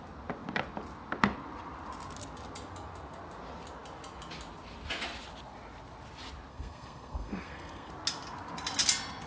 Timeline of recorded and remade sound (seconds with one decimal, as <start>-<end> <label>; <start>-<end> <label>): 0.0-6.5 recorded; 6.5-7.9 remade; 7.9-9.3 recorded